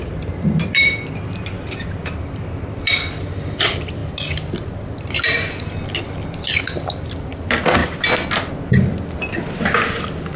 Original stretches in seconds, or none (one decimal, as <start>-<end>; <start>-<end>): 4.0-7.0; 7.8-8.5